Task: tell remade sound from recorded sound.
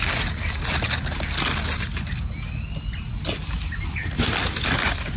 recorded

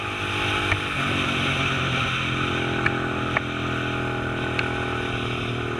recorded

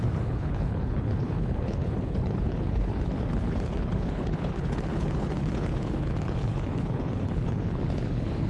remade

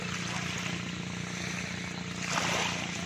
recorded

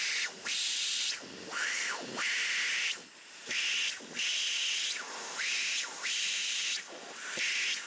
recorded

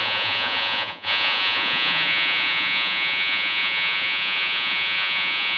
remade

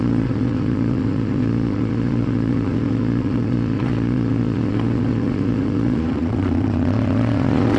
remade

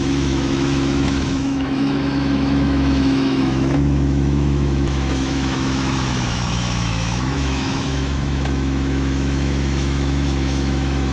remade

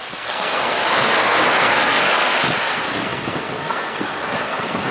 remade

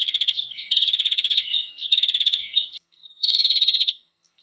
remade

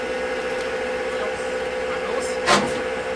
recorded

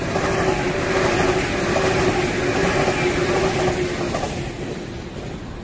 recorded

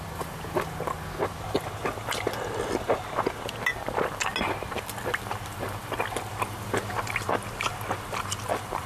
recorded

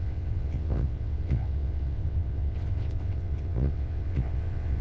remade